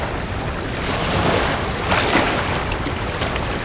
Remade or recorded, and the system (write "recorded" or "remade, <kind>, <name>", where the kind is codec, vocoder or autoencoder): recorded